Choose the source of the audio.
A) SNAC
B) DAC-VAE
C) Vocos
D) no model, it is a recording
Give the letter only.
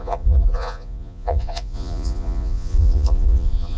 C